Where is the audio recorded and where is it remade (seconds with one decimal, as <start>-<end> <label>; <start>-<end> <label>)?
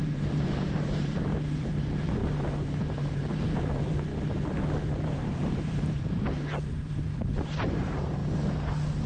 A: 0.0-4.1 remade; 4.1-4.8 recorded; 4.8-8.2 remade; 8.2-9.1 recorded